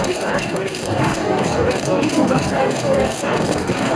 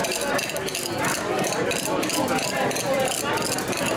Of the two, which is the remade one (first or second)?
first